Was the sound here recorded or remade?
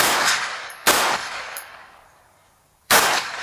remade